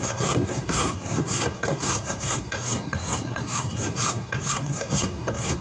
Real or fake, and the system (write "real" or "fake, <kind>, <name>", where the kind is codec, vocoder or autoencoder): fake, codec, SNAC